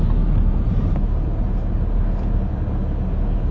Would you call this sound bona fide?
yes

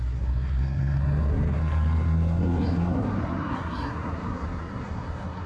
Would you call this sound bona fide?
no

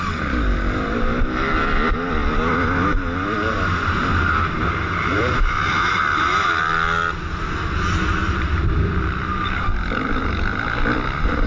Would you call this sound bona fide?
yes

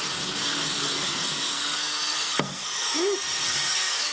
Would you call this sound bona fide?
no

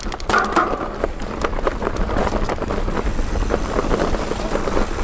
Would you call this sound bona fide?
yes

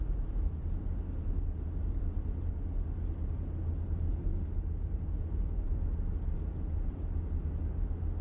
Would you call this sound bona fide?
yes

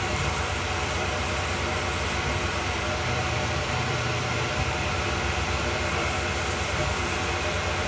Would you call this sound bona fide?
no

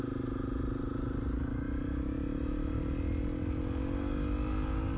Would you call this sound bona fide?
yes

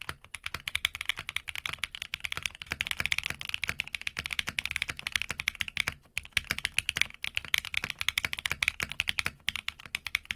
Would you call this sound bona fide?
yes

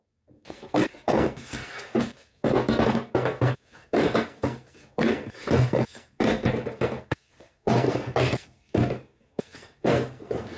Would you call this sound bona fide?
no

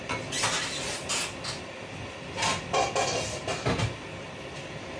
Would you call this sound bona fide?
yes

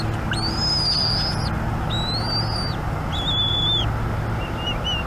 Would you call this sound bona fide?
yes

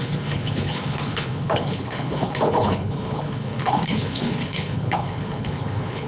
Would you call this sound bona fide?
no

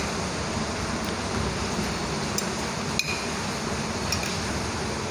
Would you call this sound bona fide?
yes